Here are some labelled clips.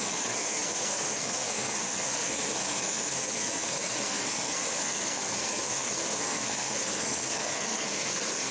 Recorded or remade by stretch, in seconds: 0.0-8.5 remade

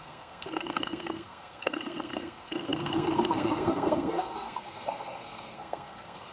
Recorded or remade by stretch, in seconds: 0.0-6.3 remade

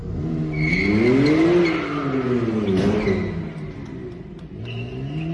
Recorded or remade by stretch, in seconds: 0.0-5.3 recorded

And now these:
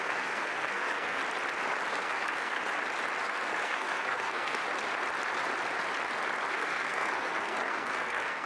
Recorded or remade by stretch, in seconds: 0.0-1.2 remade; 1.2-1.9 recorded; 1.9-2.6 remade; 2.6-3.2 recorded; 3.2-4.6 remade; 4.6-6.5 recorded; 6.5-8.5 remade